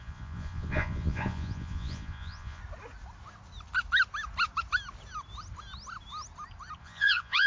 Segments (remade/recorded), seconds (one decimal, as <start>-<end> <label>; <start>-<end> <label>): 0.0-2.6 remade; 2.6-6.8 recorded; 6.8-7.5 remade